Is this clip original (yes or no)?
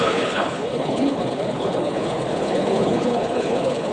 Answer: no